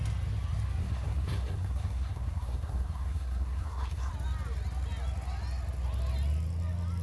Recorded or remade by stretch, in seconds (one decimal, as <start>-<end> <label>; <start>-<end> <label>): 0.0-0.8 recorded; 0.8-4.1 remade; 4.1-7.0 recorded